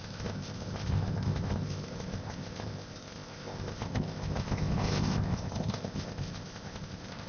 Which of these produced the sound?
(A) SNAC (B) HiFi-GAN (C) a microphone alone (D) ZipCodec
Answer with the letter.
D